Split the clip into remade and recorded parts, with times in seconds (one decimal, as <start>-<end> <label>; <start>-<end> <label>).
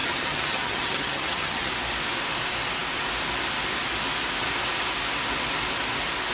0.0-1.7 remade; 1.7-6.3 recorded